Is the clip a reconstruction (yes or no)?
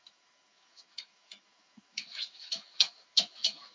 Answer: yes